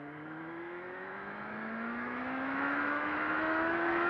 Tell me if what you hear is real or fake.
fake